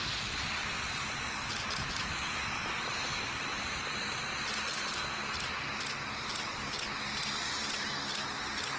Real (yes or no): yes